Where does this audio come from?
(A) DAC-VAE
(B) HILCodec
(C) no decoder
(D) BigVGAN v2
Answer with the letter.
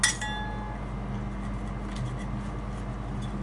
C